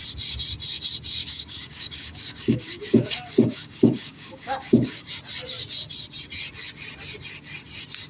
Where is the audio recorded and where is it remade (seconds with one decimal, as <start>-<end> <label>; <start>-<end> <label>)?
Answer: 0.0-1.2 recorded; 1.2-5.1 remade; 5.1-8.1 recorded